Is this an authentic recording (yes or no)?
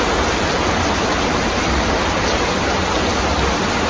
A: yes